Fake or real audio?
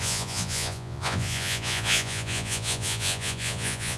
fake